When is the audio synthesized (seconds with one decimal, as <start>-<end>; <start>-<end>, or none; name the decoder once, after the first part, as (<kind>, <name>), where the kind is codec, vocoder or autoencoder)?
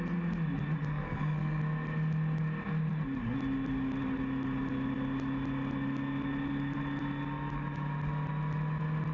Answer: 0.9-1.6 (codec, SNAC)